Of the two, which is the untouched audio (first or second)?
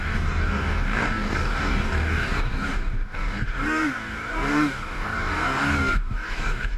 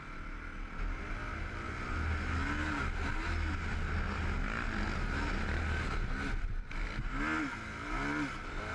second